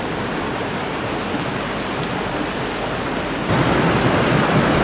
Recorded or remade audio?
recorded